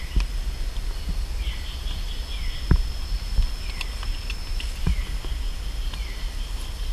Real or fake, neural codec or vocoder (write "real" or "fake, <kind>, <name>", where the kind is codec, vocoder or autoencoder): real